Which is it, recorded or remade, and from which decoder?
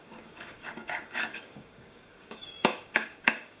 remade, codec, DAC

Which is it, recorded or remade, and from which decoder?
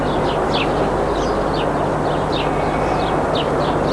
recorded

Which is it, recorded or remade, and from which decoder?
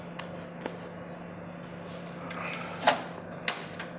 recorded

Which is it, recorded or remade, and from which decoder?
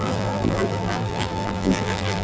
remade, vocoder, BigVGAN v2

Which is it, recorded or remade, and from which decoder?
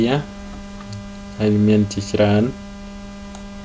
recorded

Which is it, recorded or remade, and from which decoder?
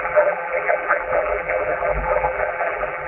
remade, vocoder, BigVGAN v2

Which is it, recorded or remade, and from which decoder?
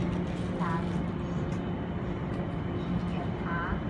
recorded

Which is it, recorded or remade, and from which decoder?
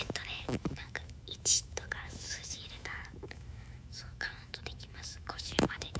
remade, autoencoder, DAC-VAE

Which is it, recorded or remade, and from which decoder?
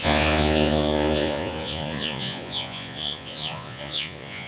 remade, vocoder, Vocos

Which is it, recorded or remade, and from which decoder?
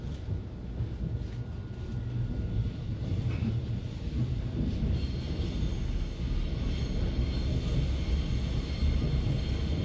recorded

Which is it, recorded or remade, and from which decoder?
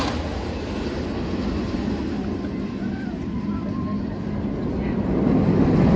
recorded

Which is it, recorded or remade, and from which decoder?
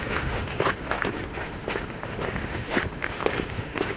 remade, autoencoder, DAC-VAE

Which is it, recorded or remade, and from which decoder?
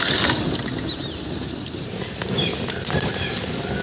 recorded